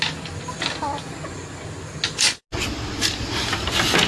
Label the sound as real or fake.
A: real